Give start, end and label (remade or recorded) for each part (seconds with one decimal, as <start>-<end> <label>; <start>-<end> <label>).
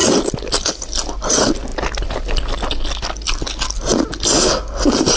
0.0-5.2 recorded